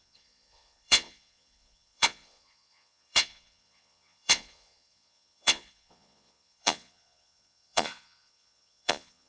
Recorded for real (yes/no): no